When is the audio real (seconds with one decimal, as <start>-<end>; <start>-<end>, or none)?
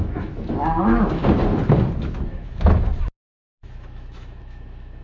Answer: 1.2-2.3; 2.9-3.5